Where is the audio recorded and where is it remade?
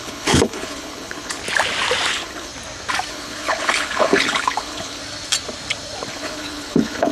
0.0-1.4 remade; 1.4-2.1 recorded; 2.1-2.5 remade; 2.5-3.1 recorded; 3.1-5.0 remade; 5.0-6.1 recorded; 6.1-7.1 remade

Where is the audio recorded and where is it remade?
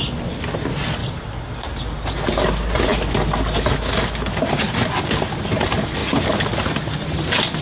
0.0-7.6 recorded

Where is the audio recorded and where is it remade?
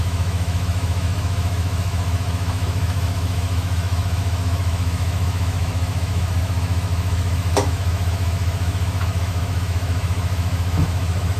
0.0-11.4 remade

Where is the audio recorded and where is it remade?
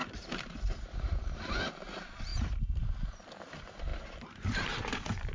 0.0-1.6 remade; 1.6-2.3 recorded; 2.3-2.9 remade; 2.9-3.9 recorded; 3.9-5.3 remade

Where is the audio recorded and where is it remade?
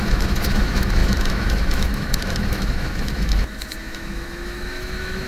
0.0-5.3 remade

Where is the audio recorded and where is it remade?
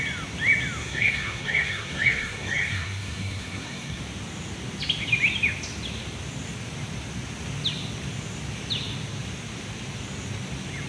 0.0-0.8 recorded; 0.8-4.0 remade; 4.0-10.9 recorded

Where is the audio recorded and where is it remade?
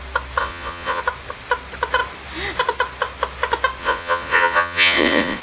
0.0-0.4 recorded; 0.4-1.0 remade; 1.0-3.8 recorded; 3.8-5.4 remade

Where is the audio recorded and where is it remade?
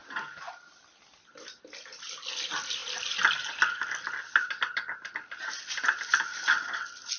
0.0-7.2 recorded